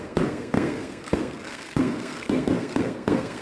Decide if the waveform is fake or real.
fake